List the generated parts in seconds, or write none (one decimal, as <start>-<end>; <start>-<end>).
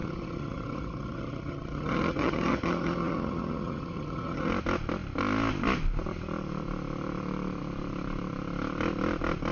0.0-4.5